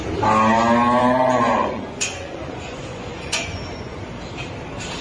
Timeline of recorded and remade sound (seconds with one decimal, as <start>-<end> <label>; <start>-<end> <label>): 0.0-1.0 recorded; 1.0-4.0 remade; 4.0-5.0 recorded